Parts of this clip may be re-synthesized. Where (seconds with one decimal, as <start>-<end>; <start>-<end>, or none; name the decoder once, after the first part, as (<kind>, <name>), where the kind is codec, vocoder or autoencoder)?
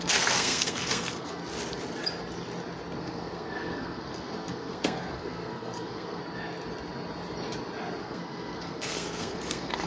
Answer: 0.0-1.4 (codec, SNAC); 3.0-6.2; 8.0-9.9